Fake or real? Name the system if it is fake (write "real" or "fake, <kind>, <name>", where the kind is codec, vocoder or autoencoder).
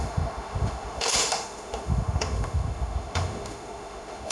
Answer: fake, autoencoder, DAC-VAE